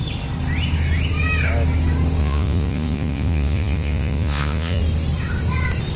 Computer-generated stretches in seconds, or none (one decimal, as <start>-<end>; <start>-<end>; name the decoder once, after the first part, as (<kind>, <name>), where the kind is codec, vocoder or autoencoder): 2.2-4.8 (vocoder, Vocos)